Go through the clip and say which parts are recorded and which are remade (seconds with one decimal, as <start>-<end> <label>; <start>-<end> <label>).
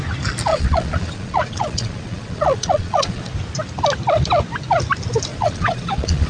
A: 0.0-0.5 recorded; 0.5-3.3 remade; 3.3-5.3 recorded; 5.3-6.3 remade